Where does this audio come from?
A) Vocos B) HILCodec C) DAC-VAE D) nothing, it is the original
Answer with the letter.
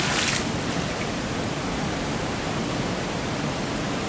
D